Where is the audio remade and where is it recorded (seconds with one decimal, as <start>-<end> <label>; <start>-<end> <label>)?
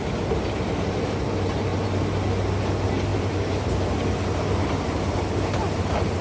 0.0-3.1 recorded; 3.1-3.8 remade; 3.8-6.2 recorded